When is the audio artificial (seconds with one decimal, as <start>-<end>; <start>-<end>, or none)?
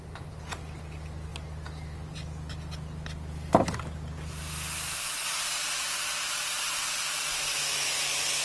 7.5-8.0